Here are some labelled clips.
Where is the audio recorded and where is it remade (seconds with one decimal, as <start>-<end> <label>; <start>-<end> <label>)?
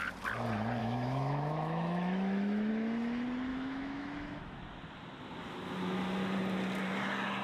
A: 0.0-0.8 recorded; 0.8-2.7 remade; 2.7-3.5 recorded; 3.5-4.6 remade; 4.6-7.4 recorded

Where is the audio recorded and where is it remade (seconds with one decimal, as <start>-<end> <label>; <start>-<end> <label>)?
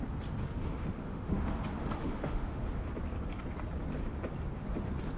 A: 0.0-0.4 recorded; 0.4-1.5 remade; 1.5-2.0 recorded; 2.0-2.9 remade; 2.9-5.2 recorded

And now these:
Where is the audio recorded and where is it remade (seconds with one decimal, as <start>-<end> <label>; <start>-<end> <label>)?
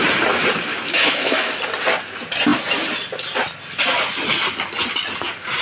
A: 0.0-0.7 recorded; 0.7-1.6 remade; 1.6-5.6 recorded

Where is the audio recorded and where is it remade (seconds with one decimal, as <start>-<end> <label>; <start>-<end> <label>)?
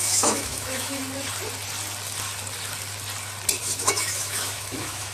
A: 0.0-1.0 remade; 1.0-3.6 recorded; 3.6-5.1 remade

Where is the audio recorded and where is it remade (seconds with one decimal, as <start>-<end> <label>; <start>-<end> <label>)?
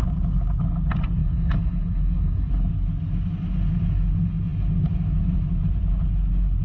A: 0.0-1.2 recorded; 1.2-2.5 remade; 2.5-6.6 recorded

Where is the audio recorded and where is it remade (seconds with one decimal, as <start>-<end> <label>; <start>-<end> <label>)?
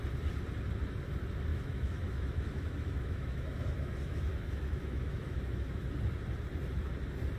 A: 0.0-1.5 recorded; 1.5-5.9 remade; 5.9-7.4 recorded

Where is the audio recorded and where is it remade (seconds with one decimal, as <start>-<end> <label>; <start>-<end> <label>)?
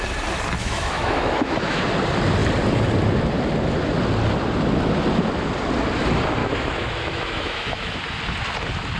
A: 0.0-0.6 recorded; 0.6-1.8 remade; 1.8-6.4 recorded; 6.4-8.0 remade; 8.0-9.0 recorded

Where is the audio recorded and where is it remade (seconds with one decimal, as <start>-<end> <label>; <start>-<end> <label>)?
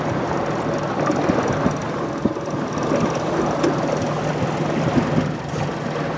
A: 0.0-6.2 recorded